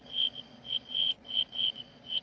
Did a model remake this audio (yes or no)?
yes